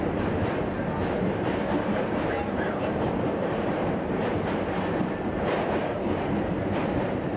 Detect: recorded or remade remade